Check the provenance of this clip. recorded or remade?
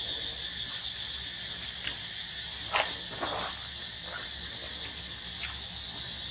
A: recorded